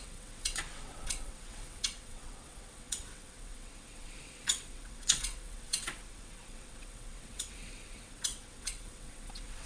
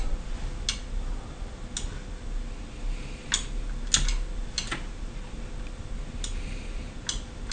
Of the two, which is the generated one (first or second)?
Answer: first